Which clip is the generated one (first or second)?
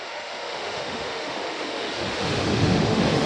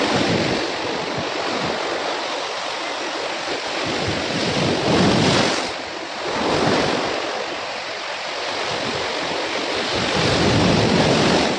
first